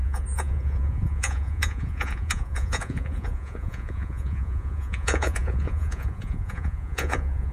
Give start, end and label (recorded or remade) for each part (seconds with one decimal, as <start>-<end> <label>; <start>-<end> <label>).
0.0-7.5 remade